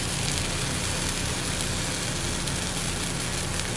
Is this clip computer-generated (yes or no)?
no